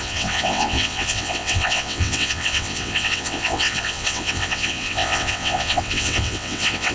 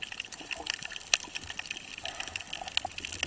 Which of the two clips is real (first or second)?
second